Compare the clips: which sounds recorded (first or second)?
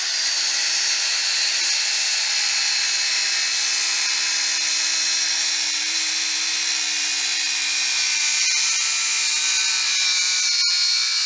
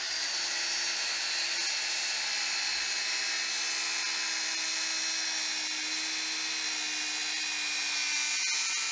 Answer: second